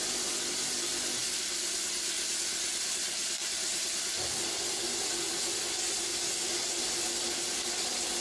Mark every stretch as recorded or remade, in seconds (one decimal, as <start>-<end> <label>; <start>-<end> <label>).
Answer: 0.0-8.2 recorded